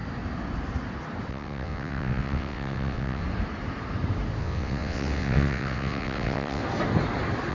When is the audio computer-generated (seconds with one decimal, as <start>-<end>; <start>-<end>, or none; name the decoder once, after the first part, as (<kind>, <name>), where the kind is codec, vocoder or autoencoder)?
1.3-3.2 (vocoder, WaveNeXt); 4.4-6.6